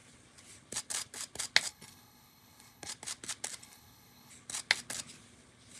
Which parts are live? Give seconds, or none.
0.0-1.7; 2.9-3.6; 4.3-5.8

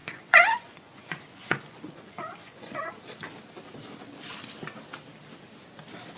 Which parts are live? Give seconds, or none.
2.9-6.2

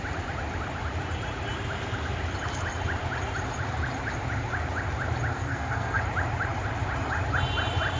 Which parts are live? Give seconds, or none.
0.0-5.3; 6.0-8.0

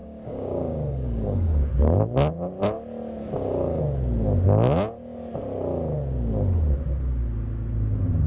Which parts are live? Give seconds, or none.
1.7-3.2; 3.8-8.3

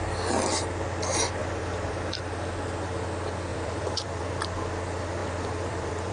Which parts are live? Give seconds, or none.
0.0-1.4; 1.9-3.5; 4.2-5.2

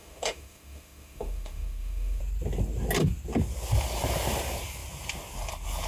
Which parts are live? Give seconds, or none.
2.2-5.9

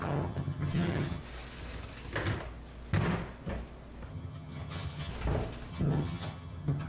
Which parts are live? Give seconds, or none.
1.2-4.1; 5.1-5.7

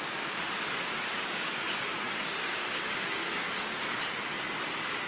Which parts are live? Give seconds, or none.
0.0-1.1; 4.2-5.1